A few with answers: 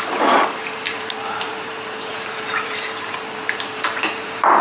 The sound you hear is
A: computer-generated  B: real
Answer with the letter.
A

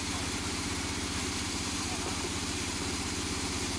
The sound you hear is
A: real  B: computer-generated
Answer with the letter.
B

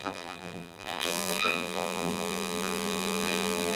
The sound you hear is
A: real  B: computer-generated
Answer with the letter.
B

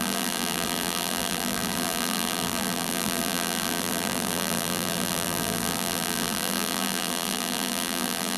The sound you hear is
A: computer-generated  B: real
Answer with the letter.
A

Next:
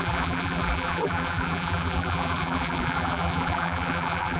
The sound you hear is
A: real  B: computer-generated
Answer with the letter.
B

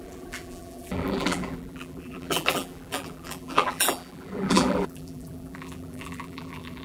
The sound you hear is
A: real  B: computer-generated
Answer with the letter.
B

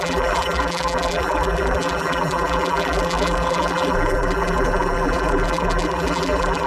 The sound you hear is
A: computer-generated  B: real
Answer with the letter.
A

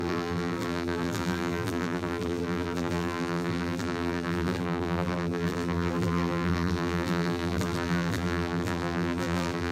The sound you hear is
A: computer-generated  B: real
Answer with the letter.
A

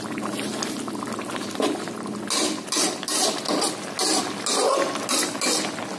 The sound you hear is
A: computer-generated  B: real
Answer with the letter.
B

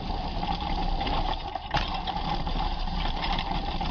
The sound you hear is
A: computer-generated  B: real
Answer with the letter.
A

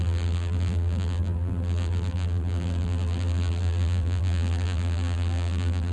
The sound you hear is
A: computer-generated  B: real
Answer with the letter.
A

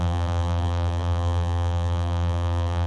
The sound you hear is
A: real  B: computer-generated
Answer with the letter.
B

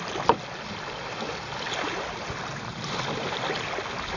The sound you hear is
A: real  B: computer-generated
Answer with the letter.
A